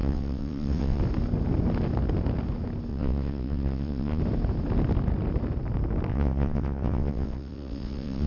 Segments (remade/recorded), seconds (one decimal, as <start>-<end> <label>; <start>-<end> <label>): 0.0-1.0 remade; 1.0-2.9 recorded; 2.9-4.2 remade; 4.2-6.1 recorded; 6.1-8.3 remade